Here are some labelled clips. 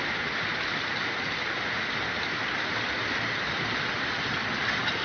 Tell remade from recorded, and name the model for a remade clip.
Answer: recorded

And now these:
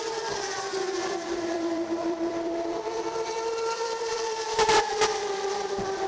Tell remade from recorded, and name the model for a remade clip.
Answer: remade, vocoder, BigVGAN v2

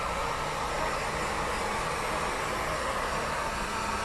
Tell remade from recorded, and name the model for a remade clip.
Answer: recorded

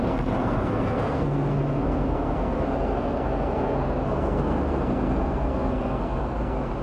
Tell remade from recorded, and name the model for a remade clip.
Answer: remade, codec, SNAC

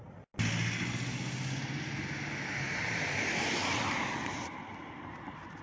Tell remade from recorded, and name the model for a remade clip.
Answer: recorded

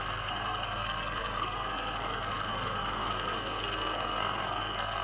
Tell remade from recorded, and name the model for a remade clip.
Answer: remade, codec, SNAC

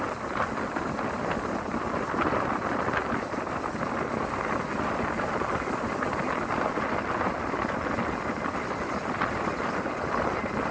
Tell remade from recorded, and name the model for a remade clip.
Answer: recorded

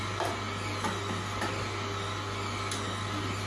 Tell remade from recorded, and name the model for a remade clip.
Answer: recorded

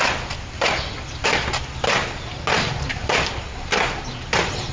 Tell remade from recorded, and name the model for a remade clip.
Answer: recorded